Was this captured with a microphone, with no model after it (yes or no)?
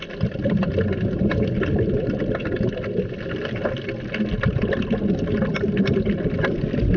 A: yes